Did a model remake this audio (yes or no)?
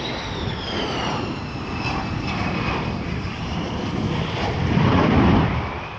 yes